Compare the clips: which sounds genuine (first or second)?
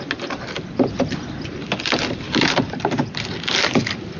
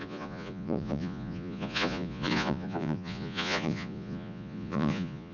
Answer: first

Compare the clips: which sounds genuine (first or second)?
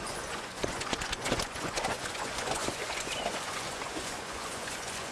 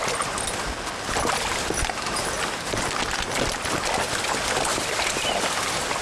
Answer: second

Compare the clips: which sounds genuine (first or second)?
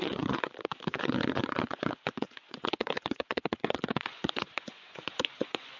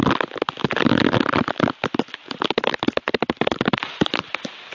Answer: second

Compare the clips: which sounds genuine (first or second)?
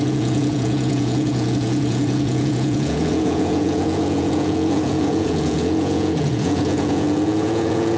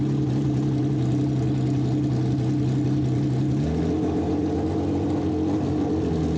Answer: second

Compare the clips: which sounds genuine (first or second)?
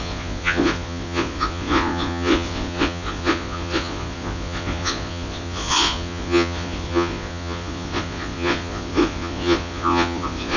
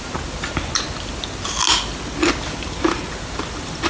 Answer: second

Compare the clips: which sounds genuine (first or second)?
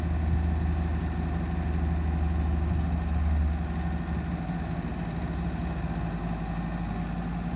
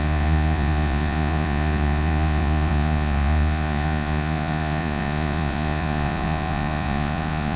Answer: first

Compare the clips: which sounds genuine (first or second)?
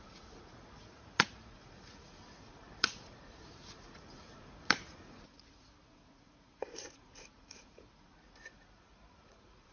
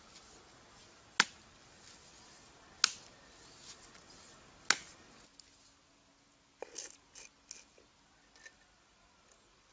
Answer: second